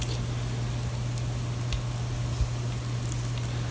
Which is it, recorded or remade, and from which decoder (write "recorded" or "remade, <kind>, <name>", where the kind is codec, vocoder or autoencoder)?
recorded